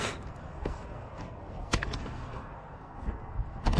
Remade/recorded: remade